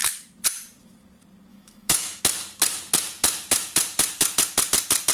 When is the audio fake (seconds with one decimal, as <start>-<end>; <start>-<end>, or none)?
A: 1.5-2.2